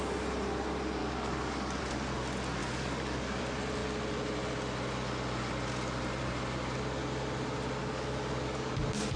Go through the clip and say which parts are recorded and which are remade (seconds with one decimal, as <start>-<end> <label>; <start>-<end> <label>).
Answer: 0.0-1.0 recorded; 1.0-1.8 remade; 1.8-2.6 recorded; 2.6-3.4 remade; 3.4-7.8 recorded; 7.8-8.7 remade; 8.7-9.2 recorded